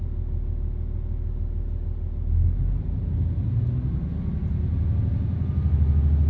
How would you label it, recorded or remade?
recorded